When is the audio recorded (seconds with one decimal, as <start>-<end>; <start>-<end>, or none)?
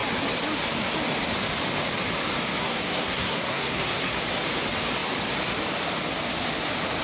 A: 0.0-2.6; 4.2-7.0